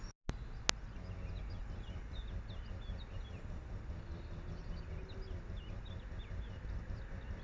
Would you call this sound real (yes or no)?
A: yes